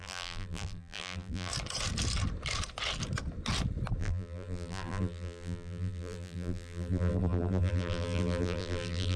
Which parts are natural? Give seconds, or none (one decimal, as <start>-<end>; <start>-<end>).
1.5-4.0